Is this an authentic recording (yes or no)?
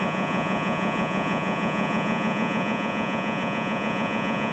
no